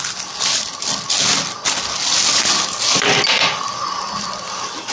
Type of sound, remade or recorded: recorded